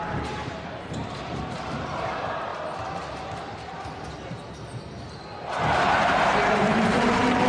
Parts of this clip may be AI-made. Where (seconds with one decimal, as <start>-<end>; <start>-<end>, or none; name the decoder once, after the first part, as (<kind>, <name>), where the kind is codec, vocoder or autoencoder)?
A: 0.0-2.5 (vocoder, BigVGAN v2); 5.5-7.5